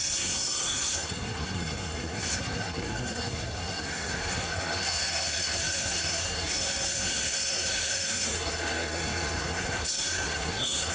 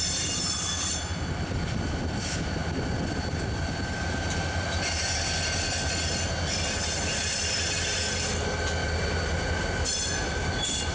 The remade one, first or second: first